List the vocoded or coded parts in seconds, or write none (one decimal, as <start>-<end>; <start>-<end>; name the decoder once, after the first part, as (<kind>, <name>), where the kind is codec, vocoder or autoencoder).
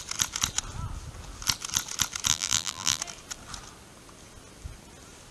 2.3-3.0 (vocoder, BigVGAN v2)